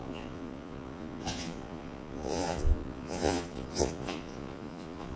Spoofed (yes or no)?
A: yes